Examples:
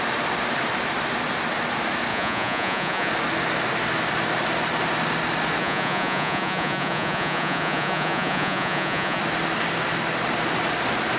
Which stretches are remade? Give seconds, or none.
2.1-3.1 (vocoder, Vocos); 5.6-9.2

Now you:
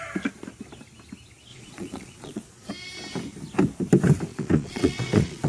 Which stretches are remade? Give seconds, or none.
1.5-2.7 (vocoder, Vocos); 4.3-5.5

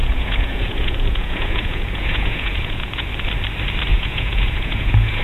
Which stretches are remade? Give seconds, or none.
0.0-3.1 (vocoder, Vocos); 3.9-5.2